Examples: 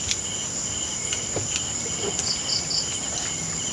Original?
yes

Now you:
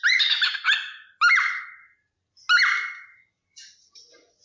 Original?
yes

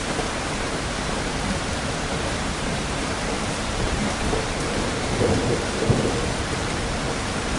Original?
no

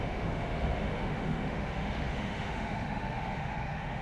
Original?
no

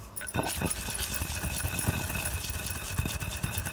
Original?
yes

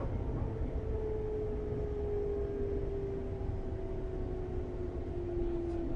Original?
yes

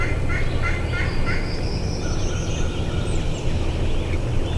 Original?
yes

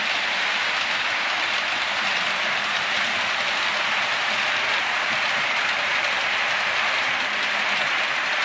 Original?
yes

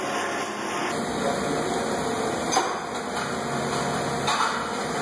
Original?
yes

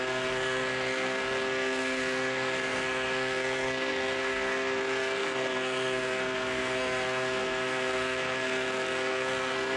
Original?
no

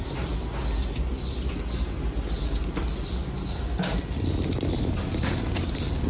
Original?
yes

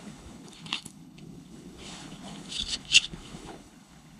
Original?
no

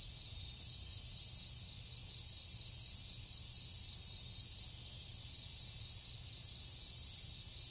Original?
yes